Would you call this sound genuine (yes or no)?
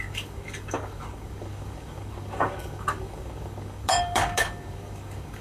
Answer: no